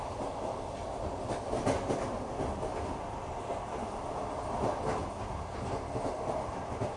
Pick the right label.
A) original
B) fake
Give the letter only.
A